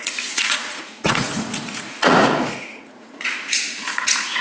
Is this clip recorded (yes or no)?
no